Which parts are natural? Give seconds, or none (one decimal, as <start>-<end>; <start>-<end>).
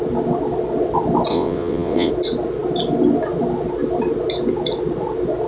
0.0-1.3; 2.1-5.5